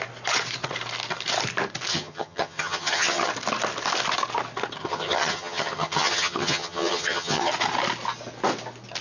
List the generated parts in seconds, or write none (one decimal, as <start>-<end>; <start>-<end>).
1.9-3.3; 4.8-7.5